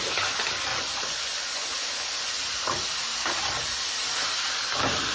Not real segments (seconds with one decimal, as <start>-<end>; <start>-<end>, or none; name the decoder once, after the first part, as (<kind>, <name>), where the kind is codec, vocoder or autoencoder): 0.7-2.3 (vocoder, Vocos)